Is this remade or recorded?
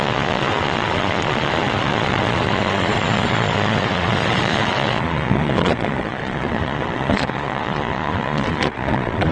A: remade